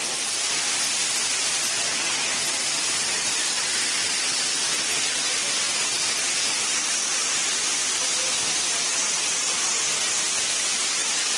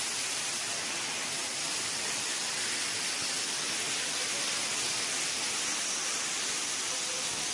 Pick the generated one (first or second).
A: second